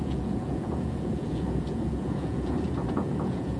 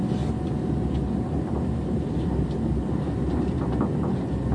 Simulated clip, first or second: first